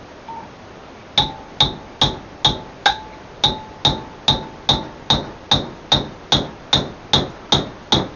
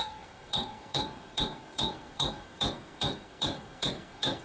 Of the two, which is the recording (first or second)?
first